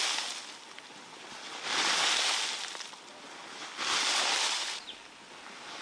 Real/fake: real